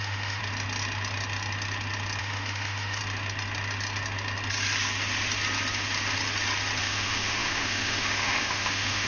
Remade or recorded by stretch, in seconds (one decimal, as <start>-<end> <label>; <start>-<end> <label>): 0.0-0.4 remade; 0.4-2.2 recorded; 2.2-3.0 remade; 3.0-6.8 recorded; 6.8-9.1 remade